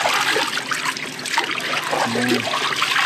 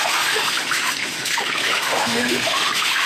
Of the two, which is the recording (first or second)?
first